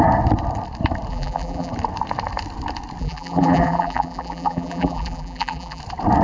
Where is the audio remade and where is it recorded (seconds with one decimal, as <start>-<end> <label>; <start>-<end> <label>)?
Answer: 0.0-1.1 recorded; 1.1-1.7 remade; 1.7-3.0 recorded; 3.0-5.8 remade; 5.8-6.2 recorded